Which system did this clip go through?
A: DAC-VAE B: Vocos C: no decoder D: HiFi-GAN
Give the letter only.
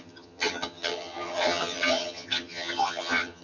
D